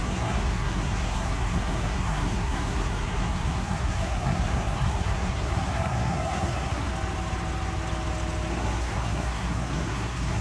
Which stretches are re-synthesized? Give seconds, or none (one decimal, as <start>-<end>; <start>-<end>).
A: 0.0-6.9; 8.5-10.4